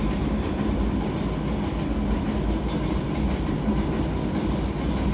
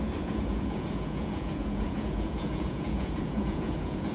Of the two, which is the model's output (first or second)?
second